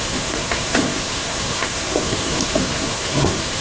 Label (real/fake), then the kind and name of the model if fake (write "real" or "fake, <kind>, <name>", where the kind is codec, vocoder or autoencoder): fake, codec, SNAC